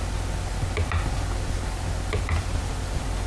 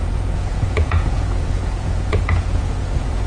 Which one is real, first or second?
first